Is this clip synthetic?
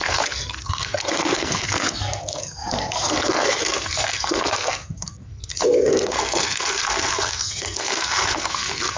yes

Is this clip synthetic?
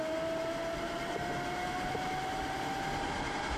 no